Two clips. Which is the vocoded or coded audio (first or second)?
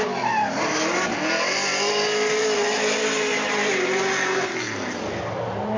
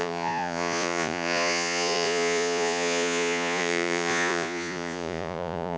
second